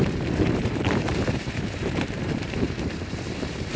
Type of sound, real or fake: fake